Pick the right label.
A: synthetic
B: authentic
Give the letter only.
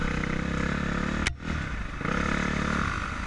B